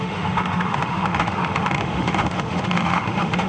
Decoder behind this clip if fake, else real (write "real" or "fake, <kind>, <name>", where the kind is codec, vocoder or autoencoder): fake, autoencoder, DAC-VAE